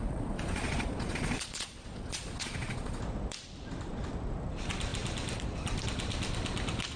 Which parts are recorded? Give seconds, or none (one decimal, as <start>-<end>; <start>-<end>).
3.0-7.0